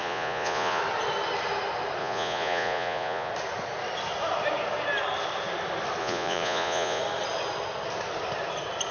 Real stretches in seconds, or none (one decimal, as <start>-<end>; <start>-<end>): 0.8-2.0; 3.3-6.0; 7.0-8.9

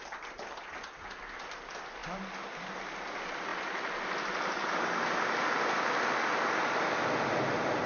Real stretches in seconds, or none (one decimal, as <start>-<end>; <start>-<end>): 0.0-7.9

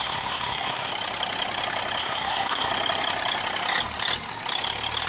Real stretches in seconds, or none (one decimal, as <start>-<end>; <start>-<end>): 0.9-2.0; 2.7-5.1

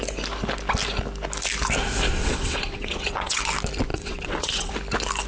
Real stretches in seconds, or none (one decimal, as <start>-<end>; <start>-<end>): 0.0-2.2; 3.4-3.9; 4.7-5.3

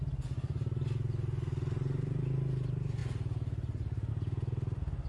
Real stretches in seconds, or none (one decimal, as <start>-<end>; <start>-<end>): 0.0-5.1